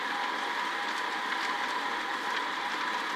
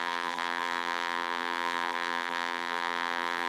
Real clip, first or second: first